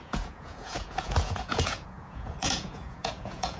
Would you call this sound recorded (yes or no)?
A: no